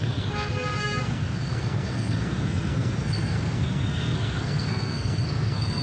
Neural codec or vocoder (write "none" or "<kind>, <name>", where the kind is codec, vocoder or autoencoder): codec, SNAC